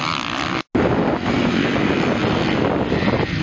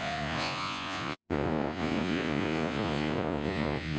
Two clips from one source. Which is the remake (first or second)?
second